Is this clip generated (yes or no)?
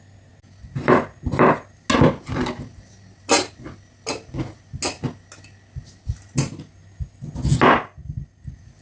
no